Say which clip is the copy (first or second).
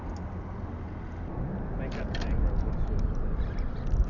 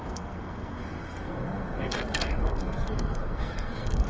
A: second